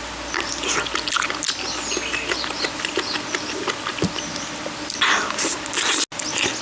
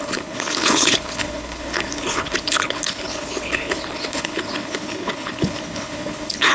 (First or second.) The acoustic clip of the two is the first